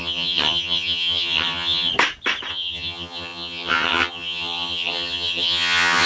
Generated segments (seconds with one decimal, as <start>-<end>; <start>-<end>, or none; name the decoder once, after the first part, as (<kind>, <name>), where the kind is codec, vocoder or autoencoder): 0.0-1.9 (vocoder, HiFi-GAN); 2.5-6.1